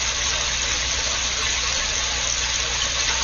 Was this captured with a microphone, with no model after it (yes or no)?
yes